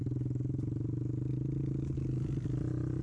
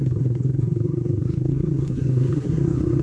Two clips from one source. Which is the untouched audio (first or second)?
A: first